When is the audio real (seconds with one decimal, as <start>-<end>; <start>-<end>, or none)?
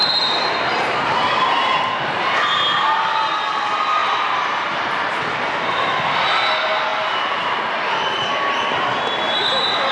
1.8-4.0; 5.4-9.9